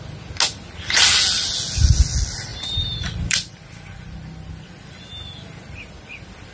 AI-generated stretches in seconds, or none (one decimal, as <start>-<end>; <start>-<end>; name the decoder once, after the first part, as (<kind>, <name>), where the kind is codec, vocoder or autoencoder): 2.5-4.5 (vocoder, BigVGAN v2)